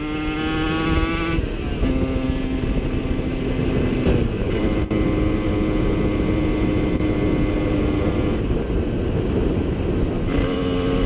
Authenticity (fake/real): real